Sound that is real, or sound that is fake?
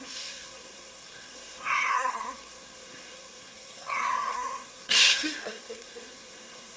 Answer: fake